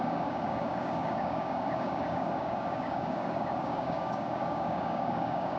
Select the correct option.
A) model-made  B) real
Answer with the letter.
A